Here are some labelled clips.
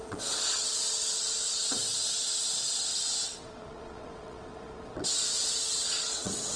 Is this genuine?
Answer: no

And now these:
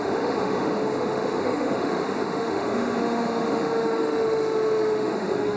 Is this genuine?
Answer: no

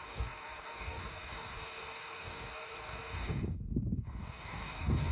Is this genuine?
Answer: no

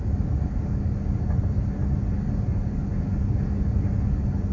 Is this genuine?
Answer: yes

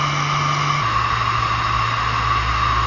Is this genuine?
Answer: yes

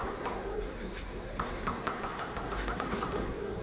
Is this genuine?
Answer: no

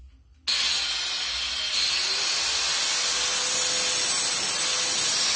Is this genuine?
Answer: yes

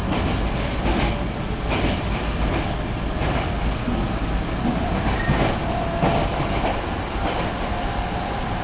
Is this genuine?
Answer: yes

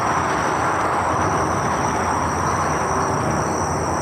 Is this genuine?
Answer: yes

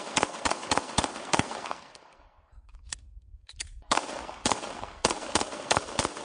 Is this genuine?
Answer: no